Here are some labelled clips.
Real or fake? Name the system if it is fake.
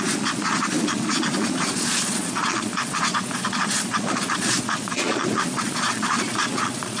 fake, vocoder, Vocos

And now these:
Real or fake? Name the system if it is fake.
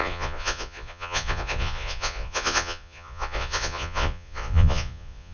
fake, vocoder, Vocos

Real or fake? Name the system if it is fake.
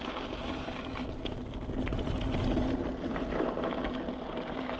real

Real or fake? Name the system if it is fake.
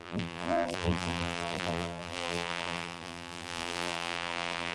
fake, vocoder, BigVGAN v2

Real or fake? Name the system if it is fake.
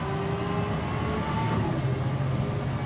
real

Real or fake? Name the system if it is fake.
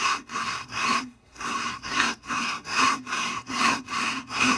fake, codec, SNAC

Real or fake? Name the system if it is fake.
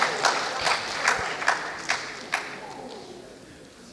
real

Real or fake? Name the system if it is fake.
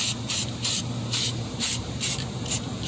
fake, vocoder, BigVGAN v2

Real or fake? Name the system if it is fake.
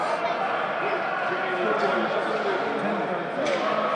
real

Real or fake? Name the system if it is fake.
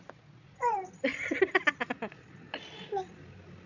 real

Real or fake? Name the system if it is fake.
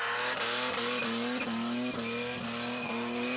real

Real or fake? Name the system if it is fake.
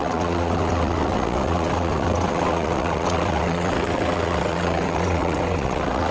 fake, vocoder, WaveNeXt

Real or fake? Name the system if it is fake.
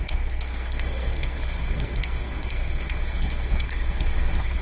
fake, codec, SNAC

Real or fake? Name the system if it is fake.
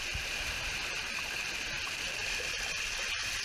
real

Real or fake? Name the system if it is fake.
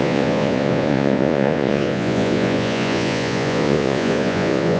fake, vocoder, Vocos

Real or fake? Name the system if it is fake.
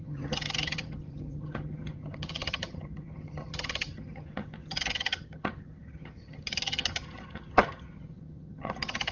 fake, vocoder, HiFi-GAN